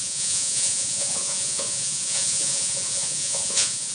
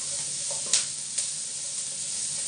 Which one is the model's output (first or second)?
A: first